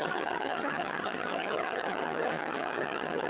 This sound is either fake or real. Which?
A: fake